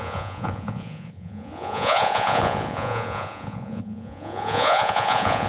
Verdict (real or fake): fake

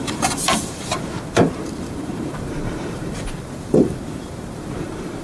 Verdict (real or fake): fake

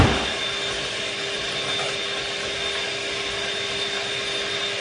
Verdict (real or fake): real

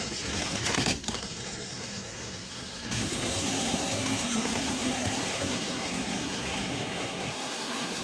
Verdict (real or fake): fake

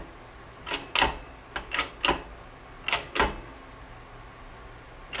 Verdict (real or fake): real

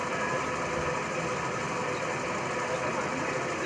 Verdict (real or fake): real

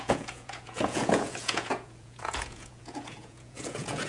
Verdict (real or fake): fake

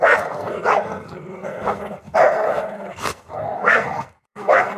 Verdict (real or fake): fake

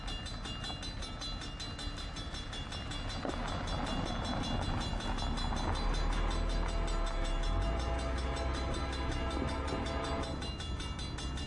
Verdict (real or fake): real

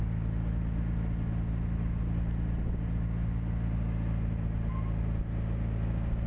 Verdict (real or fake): real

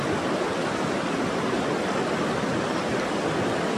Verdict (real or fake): real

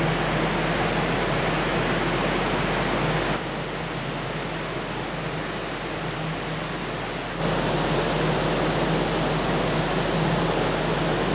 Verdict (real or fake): real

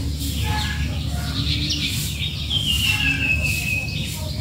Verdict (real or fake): real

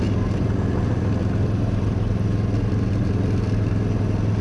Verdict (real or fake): real